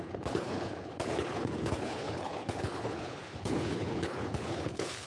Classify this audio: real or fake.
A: fake